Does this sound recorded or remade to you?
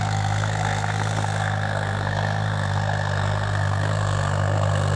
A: remade